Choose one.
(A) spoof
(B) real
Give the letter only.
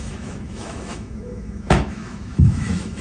A